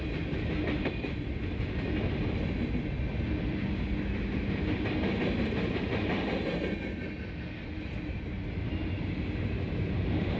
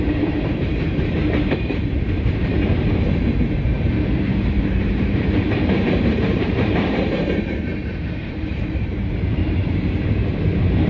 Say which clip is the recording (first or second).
first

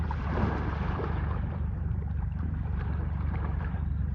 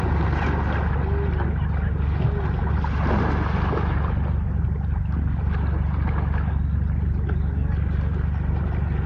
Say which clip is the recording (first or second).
second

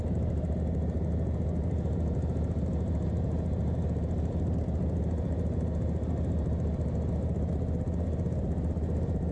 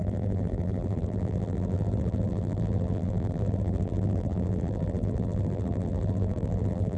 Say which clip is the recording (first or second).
first